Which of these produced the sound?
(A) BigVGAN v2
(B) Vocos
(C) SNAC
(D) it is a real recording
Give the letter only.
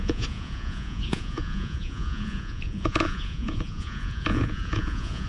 B